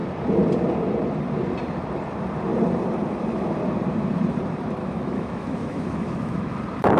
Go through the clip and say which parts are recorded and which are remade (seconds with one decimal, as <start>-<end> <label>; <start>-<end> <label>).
0.0-4.8 recorded; 4.8-6.6 remade; 6.6-7.0 recorded